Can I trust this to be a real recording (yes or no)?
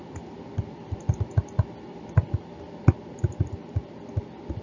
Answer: no